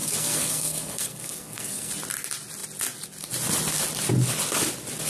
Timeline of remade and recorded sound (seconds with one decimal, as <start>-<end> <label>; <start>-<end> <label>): 0.0-1.9 remade; 1.9-5.1 recorded